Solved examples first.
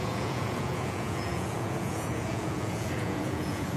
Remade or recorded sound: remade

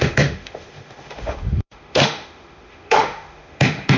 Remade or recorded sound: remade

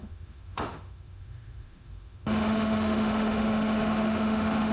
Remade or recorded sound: remade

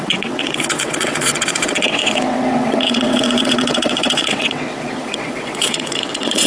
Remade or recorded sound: remade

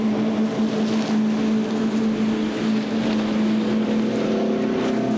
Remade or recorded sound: recorded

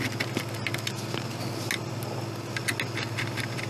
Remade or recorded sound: recorded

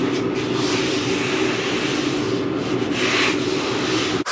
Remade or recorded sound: recorded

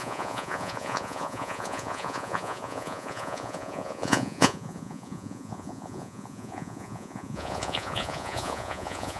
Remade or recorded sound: remade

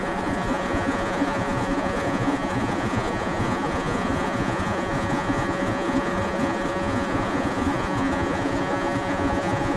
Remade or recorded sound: remade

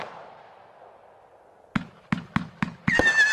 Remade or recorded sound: recorded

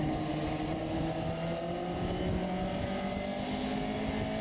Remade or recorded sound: recorded